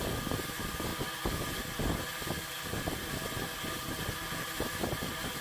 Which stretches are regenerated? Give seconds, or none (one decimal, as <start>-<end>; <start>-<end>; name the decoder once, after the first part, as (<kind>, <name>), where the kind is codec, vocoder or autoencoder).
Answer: none

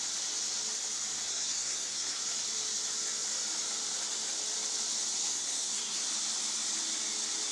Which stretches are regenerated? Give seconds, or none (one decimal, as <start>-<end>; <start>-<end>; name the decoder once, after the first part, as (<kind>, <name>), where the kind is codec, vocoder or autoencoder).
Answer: 1.3-2.2 (codec, SNAC); 5.1-6.0

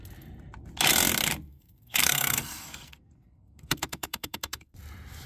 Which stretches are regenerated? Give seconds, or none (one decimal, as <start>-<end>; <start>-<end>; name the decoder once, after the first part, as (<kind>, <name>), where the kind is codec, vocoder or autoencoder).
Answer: 1.5-4.7 (codec, SNAC)

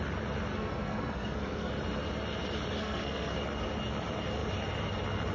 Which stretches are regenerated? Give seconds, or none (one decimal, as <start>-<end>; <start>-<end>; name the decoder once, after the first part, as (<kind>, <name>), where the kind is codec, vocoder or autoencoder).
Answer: 0.5-1.7 (codec, SNAC); 2.8-3.3

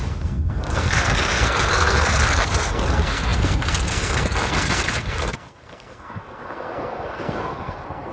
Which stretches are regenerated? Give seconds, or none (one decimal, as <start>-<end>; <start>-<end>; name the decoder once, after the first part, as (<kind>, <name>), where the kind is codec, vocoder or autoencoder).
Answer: 0.0-8.1 (codec, SNAC)

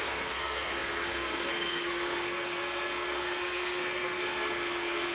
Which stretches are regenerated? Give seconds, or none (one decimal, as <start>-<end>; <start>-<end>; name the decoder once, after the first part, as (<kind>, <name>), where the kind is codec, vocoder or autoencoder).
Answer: 0.0-5.1 (codec, SNAC)

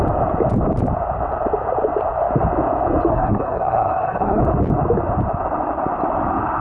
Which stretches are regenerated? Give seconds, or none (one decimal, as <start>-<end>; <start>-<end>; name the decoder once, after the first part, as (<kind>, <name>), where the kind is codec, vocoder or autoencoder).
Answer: 3.1-4.4 (codec, SNAC)